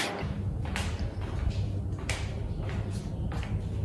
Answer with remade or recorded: recorded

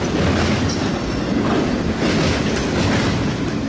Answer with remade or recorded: recorded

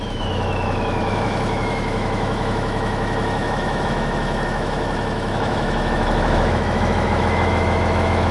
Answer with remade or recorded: remade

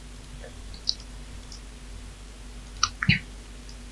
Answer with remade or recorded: recorded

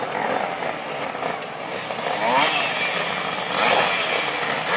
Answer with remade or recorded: recorded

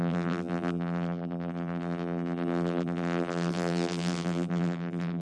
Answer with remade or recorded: remade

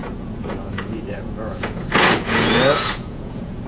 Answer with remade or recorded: remade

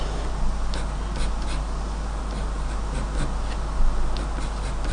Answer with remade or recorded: recorded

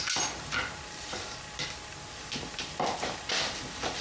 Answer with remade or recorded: recorded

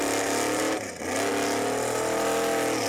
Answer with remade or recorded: recorded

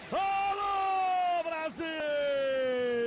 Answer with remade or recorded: recorded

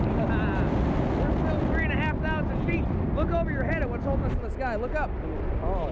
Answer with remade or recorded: recorded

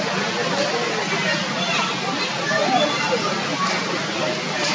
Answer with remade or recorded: recorded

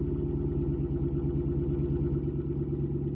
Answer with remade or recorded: recorded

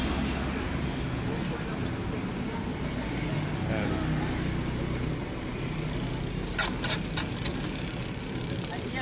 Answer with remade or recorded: recorded